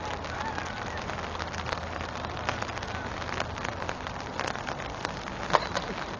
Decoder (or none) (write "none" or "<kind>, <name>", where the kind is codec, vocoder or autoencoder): none